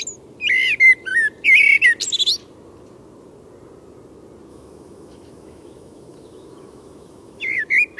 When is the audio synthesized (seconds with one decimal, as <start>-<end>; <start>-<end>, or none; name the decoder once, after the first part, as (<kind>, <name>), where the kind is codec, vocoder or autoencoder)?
4.5-7.6 (autoencoder, DAC-VAE)